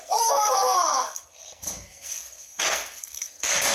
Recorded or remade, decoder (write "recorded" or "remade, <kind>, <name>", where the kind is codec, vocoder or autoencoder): remade, codec, SNAC